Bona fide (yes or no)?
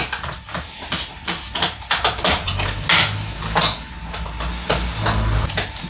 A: yes